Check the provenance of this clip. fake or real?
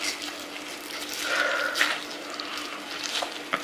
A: real